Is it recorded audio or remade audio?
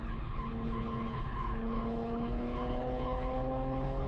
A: remade